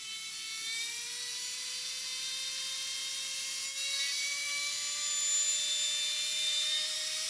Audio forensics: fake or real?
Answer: fake